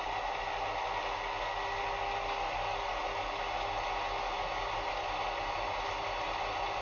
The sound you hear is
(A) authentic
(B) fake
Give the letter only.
A